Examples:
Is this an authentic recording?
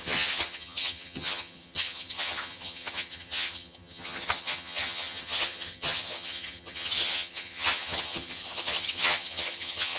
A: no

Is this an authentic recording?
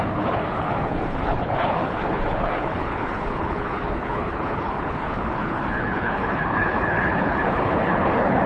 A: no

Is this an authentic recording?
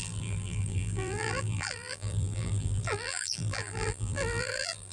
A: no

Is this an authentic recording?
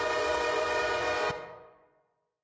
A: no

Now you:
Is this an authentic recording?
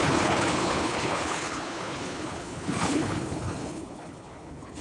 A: no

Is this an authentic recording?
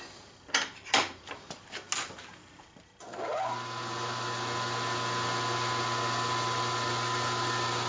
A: yes